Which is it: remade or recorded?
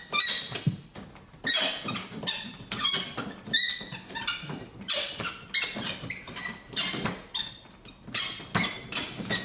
recorded